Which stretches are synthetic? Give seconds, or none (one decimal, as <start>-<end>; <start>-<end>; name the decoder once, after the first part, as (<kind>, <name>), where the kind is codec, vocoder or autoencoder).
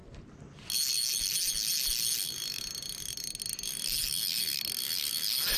none